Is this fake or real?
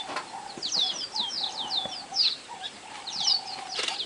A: fake